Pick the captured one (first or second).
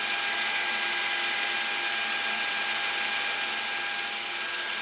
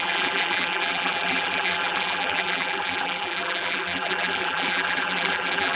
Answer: first